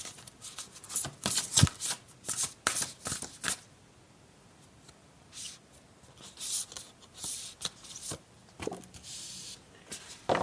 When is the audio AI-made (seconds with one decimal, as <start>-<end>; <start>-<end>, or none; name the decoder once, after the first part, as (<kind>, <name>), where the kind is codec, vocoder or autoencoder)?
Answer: 8.4-9.1 (vocoder, BigVGAN v2)

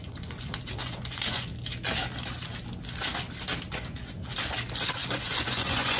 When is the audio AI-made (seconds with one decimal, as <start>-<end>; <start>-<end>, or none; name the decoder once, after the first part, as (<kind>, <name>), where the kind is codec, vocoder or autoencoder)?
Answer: 0.0-1.5 (vocoder, Vocos); 3.7-4.3; 5.0-6.0

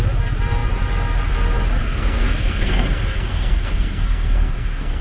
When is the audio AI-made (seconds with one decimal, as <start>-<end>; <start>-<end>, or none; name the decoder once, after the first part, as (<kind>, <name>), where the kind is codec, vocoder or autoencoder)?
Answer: 1.8-5.0 (codec, SNAC)